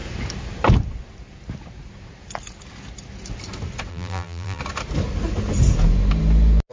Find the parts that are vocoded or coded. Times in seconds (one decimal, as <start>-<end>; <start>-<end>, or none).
3.9-4.6